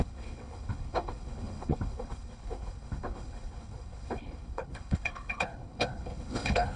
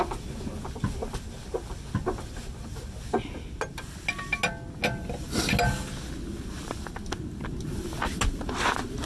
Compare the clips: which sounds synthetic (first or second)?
first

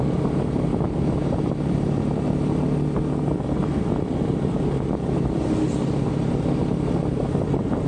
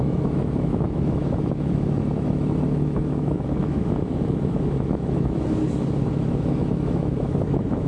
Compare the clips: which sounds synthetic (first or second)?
second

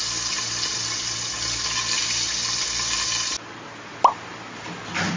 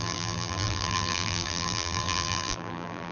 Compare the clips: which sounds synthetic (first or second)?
second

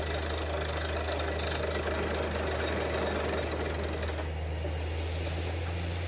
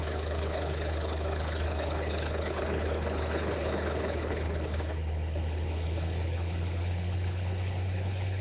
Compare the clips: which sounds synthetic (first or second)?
second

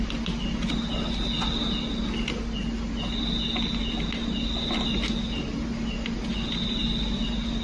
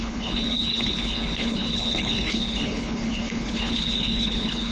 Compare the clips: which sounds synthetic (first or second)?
second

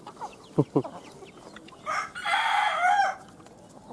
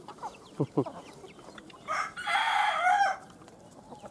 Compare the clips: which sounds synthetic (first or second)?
second